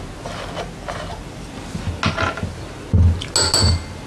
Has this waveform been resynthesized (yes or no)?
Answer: no